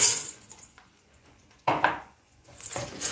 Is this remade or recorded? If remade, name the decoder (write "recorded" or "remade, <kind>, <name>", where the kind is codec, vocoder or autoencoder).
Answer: remade, vocoder, Vocos